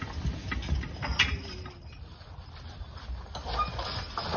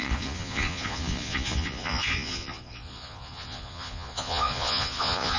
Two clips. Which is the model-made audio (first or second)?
second